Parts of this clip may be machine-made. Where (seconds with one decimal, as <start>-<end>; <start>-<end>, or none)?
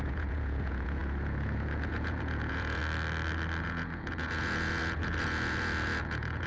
0.0-2.8; 3.6-6.5